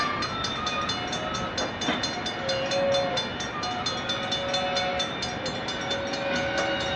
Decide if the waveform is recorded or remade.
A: recorded